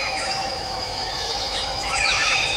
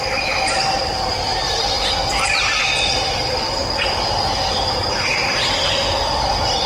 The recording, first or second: second